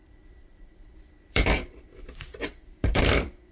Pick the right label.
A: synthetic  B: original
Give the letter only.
A